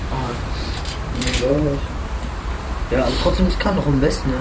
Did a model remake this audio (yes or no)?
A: yes